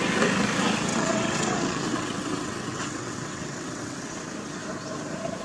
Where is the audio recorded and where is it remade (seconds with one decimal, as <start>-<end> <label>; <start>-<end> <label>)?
0.0-0.9 recorded; 0.9-4.1 remade; 4.1-5.4 recorded